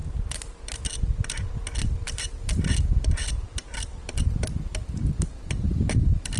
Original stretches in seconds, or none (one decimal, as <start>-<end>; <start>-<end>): 0.0-6.4